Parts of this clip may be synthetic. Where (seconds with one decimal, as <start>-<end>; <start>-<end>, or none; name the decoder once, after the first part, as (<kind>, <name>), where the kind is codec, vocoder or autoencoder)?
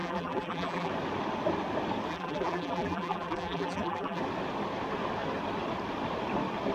0.0-0.9 (vocoder, BigVGAN v2); 2.1-4.2